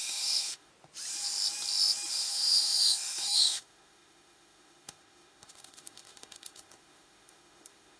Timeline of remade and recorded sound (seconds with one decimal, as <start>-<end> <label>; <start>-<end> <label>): 0.0-0.7 remade; 0.7-2.1 recorded; 2.1-8.0 remade